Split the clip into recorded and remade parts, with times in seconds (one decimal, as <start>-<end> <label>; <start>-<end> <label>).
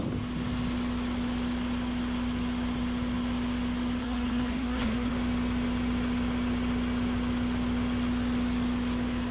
0.0-4.0 recorded; 4.0-5.1 remade; 5.1-9.3 recorded